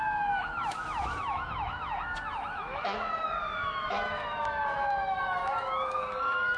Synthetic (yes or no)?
yes